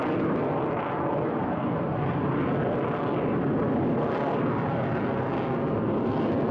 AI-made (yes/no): no